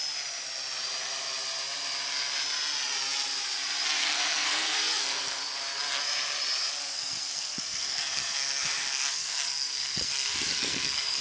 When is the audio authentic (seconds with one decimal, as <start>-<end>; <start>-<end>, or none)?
0.0-4.0; 5.4-6.8